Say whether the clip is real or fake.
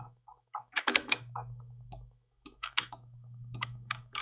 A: fake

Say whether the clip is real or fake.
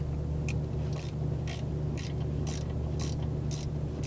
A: real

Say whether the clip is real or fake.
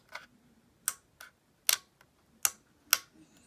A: real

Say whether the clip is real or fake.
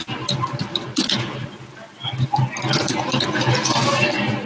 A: real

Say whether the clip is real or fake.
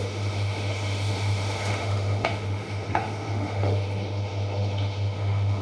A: fake